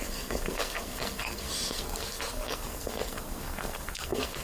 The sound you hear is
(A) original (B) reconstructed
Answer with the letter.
B